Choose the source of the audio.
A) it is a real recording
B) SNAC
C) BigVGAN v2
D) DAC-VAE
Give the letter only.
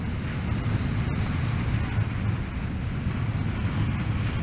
A